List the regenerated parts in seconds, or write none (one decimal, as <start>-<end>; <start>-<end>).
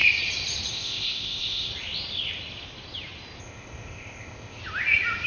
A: 0.7-1.7; 3.4-4.6